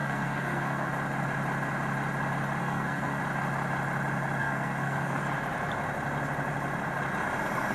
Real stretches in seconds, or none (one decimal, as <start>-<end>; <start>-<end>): 0.9-2.6; 3.2-4.4; 5.2-7.7